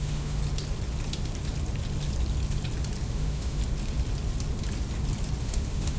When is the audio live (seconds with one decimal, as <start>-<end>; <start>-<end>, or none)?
0.4-3.1; 3.6-5.4